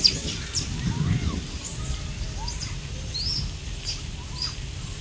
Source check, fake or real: real